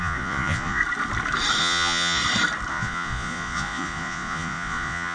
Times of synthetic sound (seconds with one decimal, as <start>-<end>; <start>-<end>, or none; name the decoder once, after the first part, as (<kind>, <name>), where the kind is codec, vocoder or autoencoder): 0.0-0.8 (vocoder, Vocos); 1.6-2.2; 2.7-5.1